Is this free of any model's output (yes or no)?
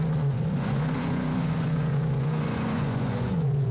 no